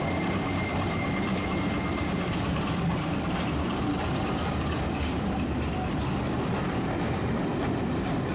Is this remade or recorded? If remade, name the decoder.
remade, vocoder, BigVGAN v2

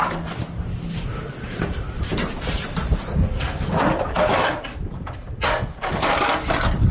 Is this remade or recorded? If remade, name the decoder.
recorded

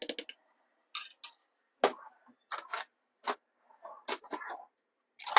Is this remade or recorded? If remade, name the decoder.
recorded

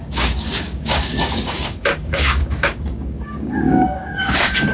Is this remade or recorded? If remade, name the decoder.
remade, codec, DAC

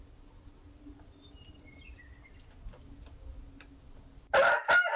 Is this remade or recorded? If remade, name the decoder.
recorded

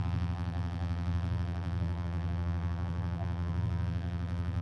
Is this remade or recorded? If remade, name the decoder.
remade, vocoder, BigVGAN v2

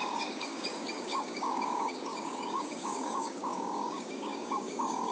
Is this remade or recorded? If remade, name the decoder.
remade, codec, DAC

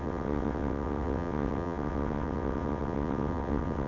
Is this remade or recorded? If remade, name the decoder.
remade, vocoder, WaveNeXt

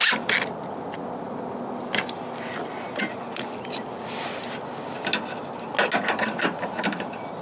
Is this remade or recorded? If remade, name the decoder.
recorded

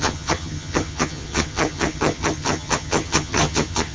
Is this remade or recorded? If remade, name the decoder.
remade, vocoder, HiFi-GAN